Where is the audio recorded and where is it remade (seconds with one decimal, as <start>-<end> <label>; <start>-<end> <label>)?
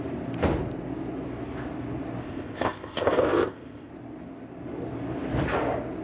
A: 0.0-2.2 recorded; 2.2-3.9 remade; 3.9-6.0 recorded